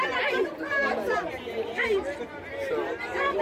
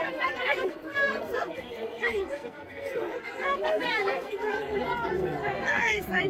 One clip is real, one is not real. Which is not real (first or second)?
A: second